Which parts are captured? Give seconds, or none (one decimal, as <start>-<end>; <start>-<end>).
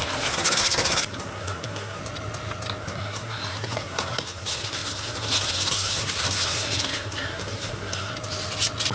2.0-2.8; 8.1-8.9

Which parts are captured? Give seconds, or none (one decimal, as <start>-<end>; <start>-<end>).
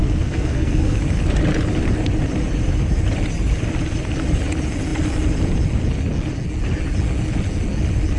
1.0-8.2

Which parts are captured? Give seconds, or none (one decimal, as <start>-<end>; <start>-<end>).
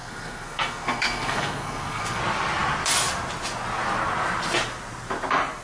2.2-5.6